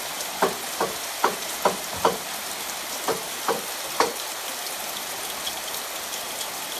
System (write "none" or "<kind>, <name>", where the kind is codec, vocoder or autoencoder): none